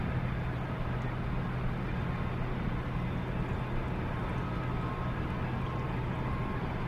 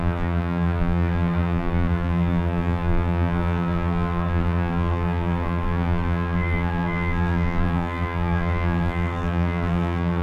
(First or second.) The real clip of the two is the first